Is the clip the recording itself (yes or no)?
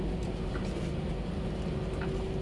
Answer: yes